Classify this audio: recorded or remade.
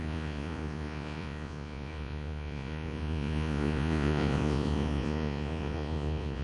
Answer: remade